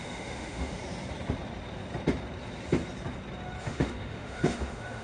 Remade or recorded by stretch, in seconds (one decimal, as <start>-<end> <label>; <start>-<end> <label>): 0.0-0.8 remade; 0.8-3.6 recorded; 3.6-5.0 remade